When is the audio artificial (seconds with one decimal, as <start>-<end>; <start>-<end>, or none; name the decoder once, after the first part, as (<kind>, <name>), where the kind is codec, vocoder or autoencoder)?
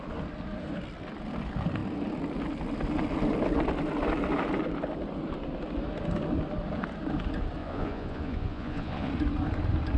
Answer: 7.6-9.1 (vocoder, Vocos)